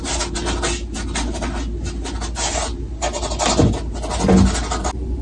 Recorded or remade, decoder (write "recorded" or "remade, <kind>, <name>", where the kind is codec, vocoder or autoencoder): recorded